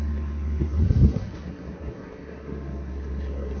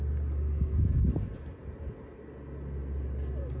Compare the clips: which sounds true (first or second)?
second